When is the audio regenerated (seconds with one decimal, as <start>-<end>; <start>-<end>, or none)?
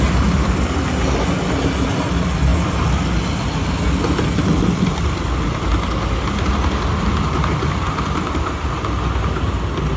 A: none